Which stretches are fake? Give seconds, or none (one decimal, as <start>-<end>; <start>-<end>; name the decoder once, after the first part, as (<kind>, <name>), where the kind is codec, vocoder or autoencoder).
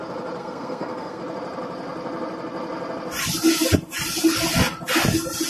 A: 0.4-1.2 (codec, SNAC)